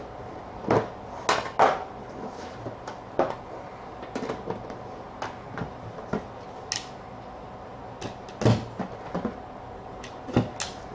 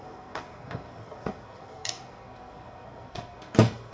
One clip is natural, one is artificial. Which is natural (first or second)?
first